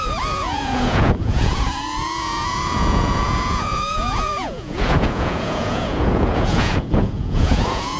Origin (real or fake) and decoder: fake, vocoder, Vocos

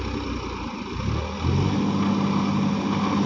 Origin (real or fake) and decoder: real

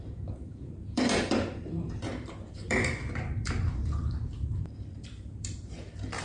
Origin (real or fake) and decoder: fake, vocoder, BigVGAN v2